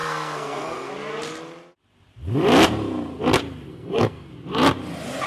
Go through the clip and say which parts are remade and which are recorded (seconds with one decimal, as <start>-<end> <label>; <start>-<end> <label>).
0.0-0.9 remade; 0.9-3.7 recorded; 3.7-4.3 remade; 4.3-5.3 recorded